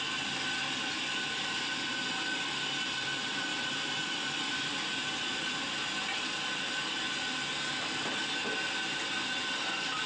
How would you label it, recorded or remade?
recorded